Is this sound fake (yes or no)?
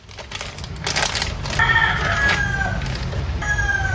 no